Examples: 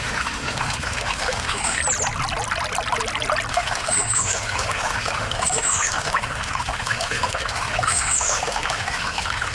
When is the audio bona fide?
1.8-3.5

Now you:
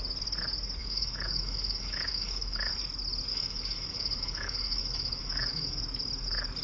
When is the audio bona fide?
0.0-0.8; 2.7-3.3; 5.8-6.6

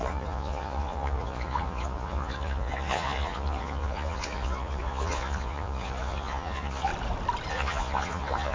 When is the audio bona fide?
6.9-7.5

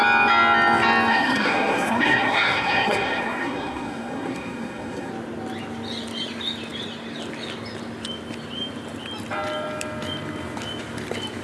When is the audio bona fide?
0.0-1.1; 5.1-11.4

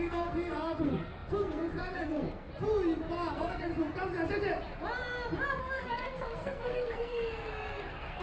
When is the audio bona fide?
2.5-3.3; 3.7-5.6

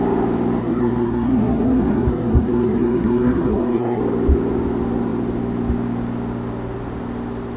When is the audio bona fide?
0.0-0.6; 4.0-7.6

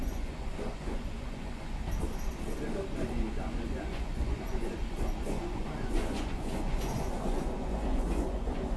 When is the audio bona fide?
1.8-3.1